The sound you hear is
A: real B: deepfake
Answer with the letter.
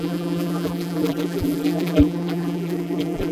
B